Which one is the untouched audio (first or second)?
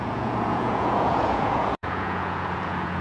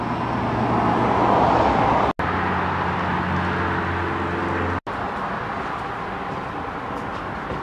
second